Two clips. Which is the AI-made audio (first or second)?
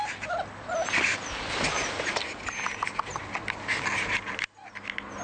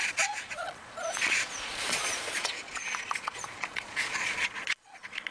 second